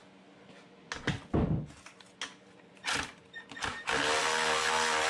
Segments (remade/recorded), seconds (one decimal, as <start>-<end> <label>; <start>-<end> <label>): 0.0-5.1 recorded